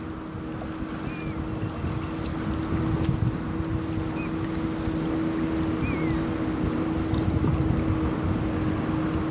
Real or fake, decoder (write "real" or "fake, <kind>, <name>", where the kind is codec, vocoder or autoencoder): real